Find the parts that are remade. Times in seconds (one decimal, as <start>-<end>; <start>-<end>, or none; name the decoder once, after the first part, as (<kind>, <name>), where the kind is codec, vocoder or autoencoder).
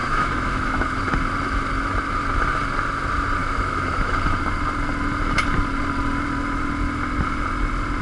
0.0-1.0 (autoencoder, DAC-VAE); 3.4-4.2